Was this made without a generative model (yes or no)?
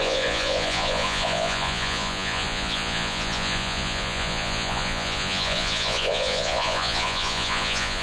no